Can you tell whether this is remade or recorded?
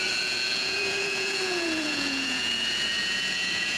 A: remade